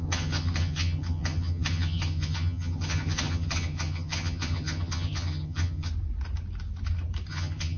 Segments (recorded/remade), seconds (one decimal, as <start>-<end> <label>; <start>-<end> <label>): 0.0-5.9 remade; 5.9-7.3 recorded; 7.3-7.8 remade